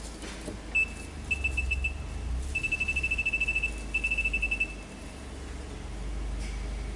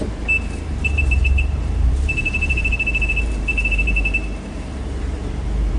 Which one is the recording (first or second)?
first